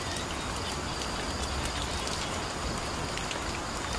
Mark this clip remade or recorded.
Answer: recorded